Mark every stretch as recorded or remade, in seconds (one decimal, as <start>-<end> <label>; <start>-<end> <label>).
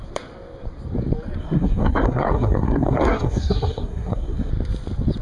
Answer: 0.0-1.4 recorded; 1.4-4.5 remade; 4.5-5.2 recorded